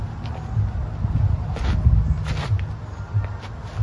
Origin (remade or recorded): recorded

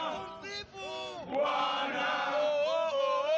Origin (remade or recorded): recorded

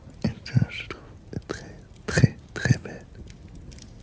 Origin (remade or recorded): recorded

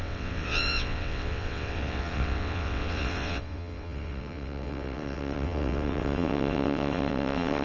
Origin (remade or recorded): remade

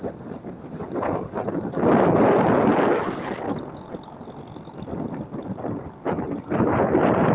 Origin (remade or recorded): recorded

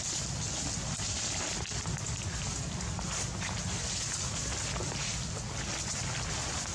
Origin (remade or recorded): recorded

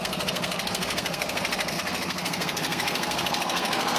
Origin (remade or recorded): remade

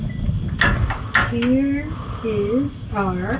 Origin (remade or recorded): recorded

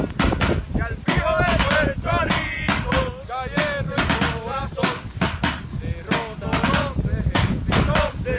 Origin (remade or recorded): recorded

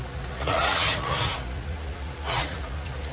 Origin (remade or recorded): remade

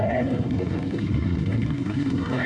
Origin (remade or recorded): remade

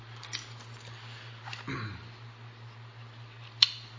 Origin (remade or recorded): recorded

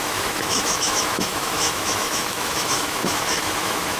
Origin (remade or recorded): remade